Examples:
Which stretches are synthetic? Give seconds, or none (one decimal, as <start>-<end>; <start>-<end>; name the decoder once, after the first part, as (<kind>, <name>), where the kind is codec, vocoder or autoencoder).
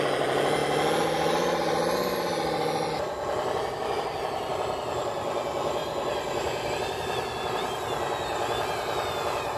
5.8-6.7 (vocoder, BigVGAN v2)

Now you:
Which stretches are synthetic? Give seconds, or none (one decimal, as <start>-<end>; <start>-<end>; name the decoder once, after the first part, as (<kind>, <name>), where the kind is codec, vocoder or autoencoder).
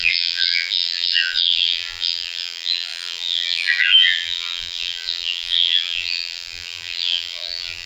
0.0-7.9 (vocoder, BigVGAN v2)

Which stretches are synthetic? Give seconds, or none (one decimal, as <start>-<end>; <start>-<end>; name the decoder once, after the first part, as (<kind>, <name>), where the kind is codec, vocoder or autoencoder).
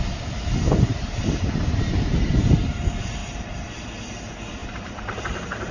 0.9-1.8 (vocoder, BigVGAN v2); 3.2-3.7; 4.6-5.2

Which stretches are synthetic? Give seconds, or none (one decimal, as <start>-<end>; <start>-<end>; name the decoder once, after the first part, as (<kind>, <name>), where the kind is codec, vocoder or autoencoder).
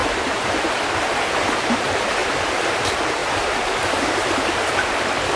0.0-2.2 (vocoder, BigVGAN v2); 2.7-5.4